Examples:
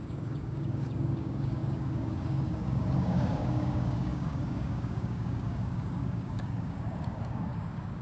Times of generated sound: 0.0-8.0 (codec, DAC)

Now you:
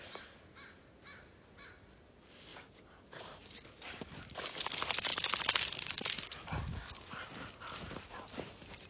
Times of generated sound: none

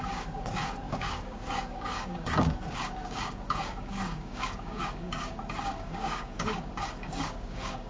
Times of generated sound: 0.0-7.9 (codec, DAC)

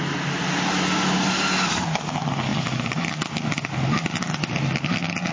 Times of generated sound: none

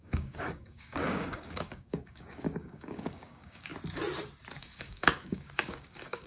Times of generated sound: 0.0-3.7 (codec, DAC); 4.6-6.3

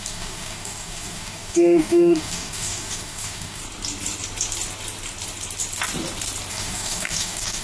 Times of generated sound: 0.0-3.6 (codec, DAC); 6.5-7.6

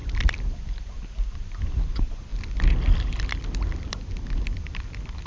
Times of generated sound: none

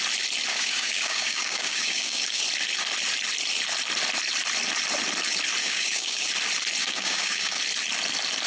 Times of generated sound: 0.5-2.4 (codec, DAC); 5.6-6.3; 6.8-7.6